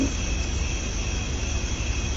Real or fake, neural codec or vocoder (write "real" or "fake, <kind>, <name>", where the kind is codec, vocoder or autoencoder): real